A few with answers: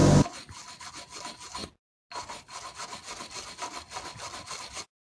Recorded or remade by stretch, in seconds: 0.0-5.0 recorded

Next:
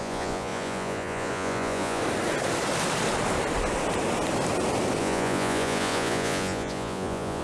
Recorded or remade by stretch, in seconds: 0.0-2.0 remade; 2.0-5.0 recorded; 5.0-7.4 remade

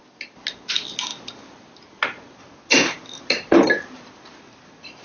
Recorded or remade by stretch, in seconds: 0.0-5.0 recorded

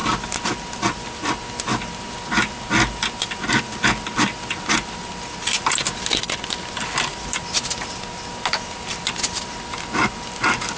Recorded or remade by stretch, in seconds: 0.0-10.8 recorded

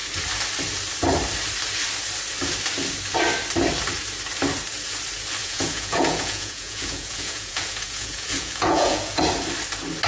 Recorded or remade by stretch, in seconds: 0.0-5.4 recorded; 5.4-9.2 remade; 9.2-10.1 recorded

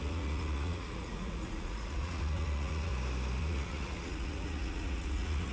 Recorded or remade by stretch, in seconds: 0.0-2.9 remade; 2.9-3.4 recorded; 3.4-5.5 remade

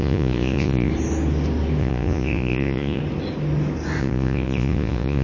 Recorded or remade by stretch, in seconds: 0.0-0.9 remade; 0.9-1.8 recorded; 1.8-3.0 remade; 3.0-4.0 recorded; 4.0-5.2 remade